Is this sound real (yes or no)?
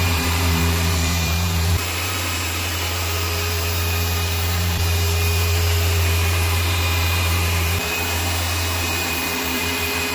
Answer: no